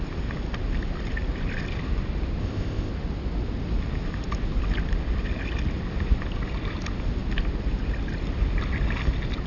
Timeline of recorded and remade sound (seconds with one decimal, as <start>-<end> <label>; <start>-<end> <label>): 0.0-2.4 recorded; 2.4-2.9 remade; 2.9-9.5 recorded